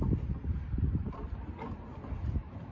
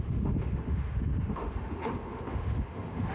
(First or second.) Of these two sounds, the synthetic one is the second